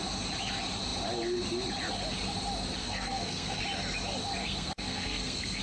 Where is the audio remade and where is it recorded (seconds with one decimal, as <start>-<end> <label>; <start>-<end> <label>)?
0.0-2.8 recorded; 2.8-3.6 remade; 3.6-4.4 recorded; 4.4-5.6 remade